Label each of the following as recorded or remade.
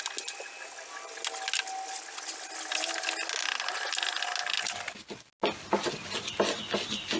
recorded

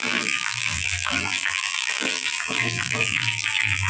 remade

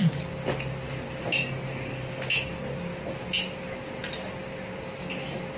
recorded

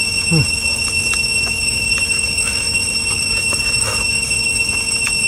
remade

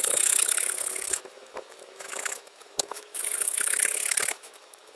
remade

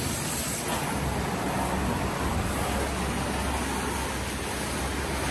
recorded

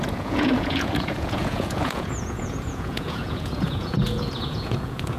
remade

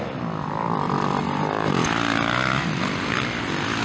recorded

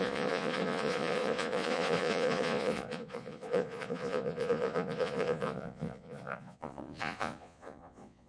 remade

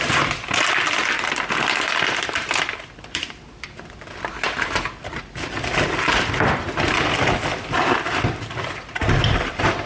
recorded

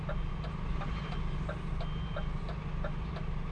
recorded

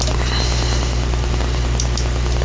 recorded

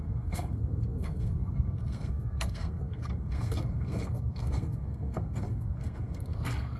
remade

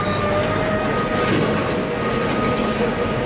recorded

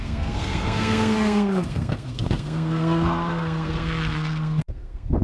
remade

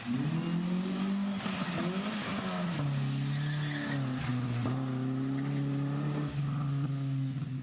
recorded